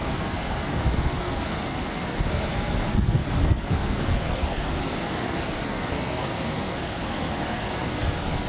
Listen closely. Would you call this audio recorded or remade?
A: remade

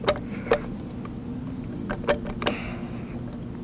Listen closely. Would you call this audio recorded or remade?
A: recorded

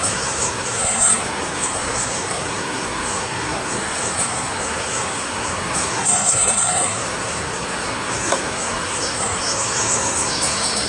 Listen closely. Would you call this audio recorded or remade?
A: remade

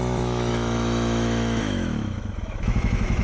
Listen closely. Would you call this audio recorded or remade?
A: remade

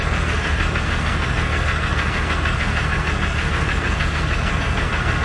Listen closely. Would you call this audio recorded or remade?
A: remade